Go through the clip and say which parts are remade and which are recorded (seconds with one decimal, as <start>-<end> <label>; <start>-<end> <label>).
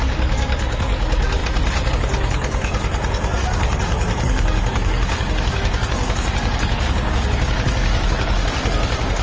0.0-1.4 remade; 1.4-1.9 recorded; 1.9-9.2 remade